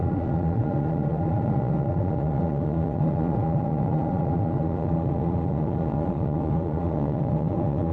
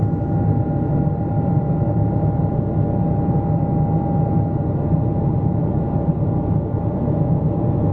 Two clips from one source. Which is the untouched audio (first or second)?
second